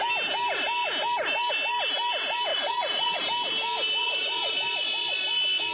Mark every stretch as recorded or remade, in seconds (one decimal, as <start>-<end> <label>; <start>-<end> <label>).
0.0-2.5 recorded; 2.5-3.2 remade; 3.2-4.0 recorded; 4.0-4.5 remade; 4.5-5.7 recorded